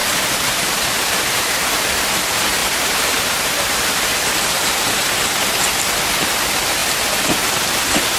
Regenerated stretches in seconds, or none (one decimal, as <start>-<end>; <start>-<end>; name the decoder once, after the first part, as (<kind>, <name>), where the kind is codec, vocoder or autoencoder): 0.0-1.5 (vocoder, BigVGAN v2); 2.6-5.0